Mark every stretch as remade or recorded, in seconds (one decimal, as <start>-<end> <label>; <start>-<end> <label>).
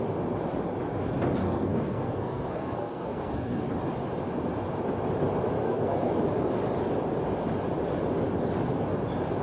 0.0-1.4 recorded; 1.4-3.7 remade; 3.7-5.6 recorded; 5.6-6.2 remade; 6.2-9.4 recorded